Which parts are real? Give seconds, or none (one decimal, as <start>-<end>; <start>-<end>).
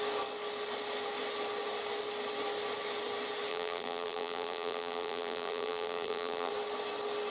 0.0-3.5; 6.5-7.3